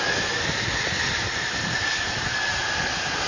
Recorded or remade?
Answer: recorded